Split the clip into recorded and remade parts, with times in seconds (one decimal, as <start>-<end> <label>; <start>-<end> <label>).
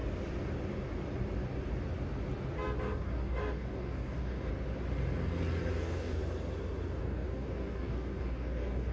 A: 0.0-2.8 recorded; 2.8-4.5 remade; 4.5-5.7 recorded; 5.7-6.2 remade; 6.2-7.0 recorded; 7.0-8.9 remade